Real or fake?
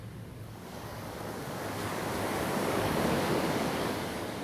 fake